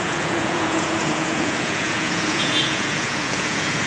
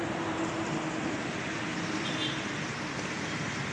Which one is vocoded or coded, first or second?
first